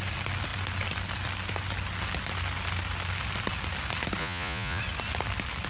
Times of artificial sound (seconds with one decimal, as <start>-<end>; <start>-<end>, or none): 4.2-4.8